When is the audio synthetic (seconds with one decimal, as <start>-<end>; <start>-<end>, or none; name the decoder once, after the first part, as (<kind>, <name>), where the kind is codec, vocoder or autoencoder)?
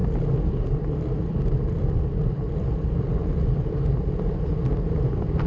none